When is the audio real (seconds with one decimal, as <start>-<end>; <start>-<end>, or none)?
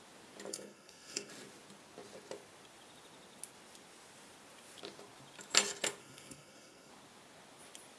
0.0-0.5; 1.3-6.0; 6.9-8.0